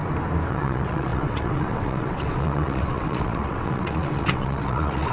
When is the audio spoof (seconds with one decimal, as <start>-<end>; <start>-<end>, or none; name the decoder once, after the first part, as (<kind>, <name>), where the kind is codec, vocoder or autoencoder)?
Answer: 0.5-5.1 (vocoder, WaveNeXt)